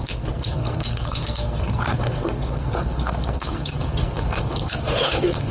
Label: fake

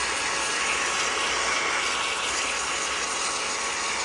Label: real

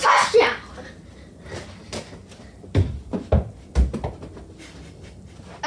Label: real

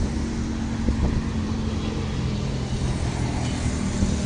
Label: real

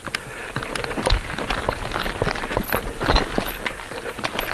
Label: real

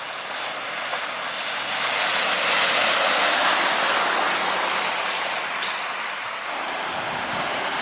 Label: real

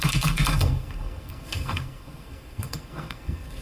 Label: fake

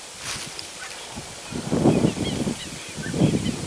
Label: real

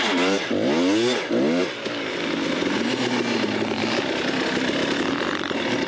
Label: real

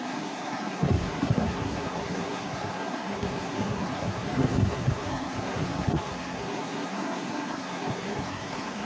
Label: fake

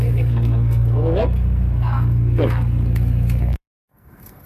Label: fake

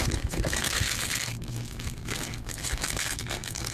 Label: fake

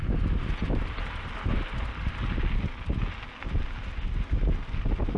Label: real